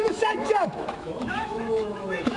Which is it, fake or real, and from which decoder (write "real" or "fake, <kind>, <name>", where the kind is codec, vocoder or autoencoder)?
fake, autoencoder, DAC-VAE